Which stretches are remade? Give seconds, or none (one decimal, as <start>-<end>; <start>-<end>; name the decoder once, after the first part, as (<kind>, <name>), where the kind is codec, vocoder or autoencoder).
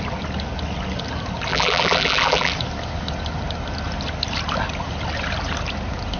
1.5-2.5 (vocoder, BigVGAN v2)